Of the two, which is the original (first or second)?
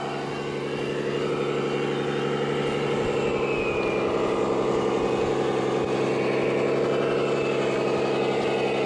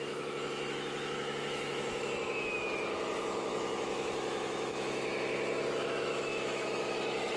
first